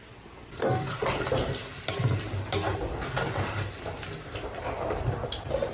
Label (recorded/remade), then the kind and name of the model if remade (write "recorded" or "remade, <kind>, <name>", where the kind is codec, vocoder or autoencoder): recorded